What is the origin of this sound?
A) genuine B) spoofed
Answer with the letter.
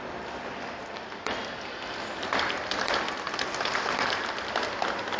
A